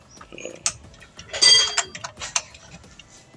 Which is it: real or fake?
real